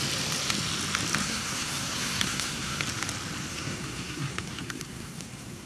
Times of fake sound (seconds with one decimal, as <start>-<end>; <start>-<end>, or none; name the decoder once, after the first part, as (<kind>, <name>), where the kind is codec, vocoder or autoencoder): 1.2-2.8 (codec, SNAC); 3.5-5.7